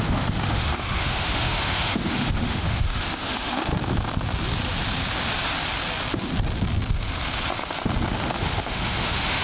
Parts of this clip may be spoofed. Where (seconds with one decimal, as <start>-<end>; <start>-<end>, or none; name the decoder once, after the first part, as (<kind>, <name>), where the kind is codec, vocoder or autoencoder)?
0.0-3.7 (autoencoder, DAC-VAE); 8.1-9.4